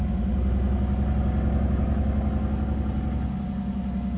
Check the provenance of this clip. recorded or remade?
recorded